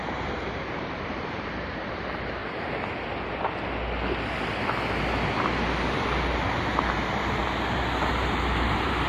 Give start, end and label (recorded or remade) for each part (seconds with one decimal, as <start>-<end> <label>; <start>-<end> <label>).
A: 0.0-2.4 remade; 2.4-6.8 recorded; 6.8-7.4 remade; 7.4-8.1 recorded; 8.1-9.1 remade